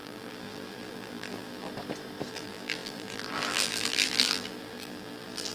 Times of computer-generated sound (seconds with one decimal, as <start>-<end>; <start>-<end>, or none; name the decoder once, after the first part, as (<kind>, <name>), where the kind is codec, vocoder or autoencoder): 0.0-1.7 (vocoder, BigVGAN v2); 2.3-5.5